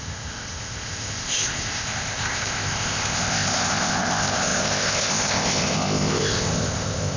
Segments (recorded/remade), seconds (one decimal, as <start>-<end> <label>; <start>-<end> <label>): 0.0-7.2 remade